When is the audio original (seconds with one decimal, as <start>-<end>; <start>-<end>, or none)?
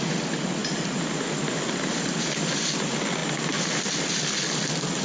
0.0-5.0